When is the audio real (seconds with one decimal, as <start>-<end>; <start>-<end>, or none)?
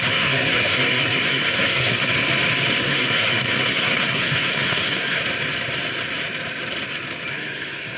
2.1-2.8; 5.2-7.3